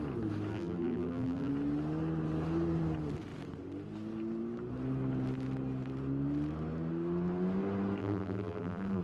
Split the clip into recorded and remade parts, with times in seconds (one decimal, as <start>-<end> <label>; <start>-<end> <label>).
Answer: 0.0-0.5 recorded; 0.5-1.5 remade; 1.5-8.0 recorded; 8.0-9.0 remade